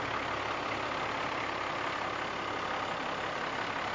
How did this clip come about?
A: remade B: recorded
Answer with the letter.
B